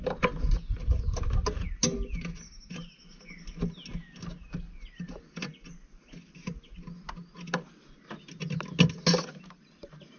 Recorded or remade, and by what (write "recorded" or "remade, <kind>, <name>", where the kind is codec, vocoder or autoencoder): recorded